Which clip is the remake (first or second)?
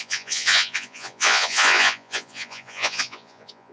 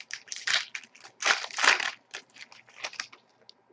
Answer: first